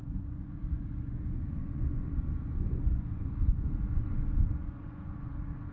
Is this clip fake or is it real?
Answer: fake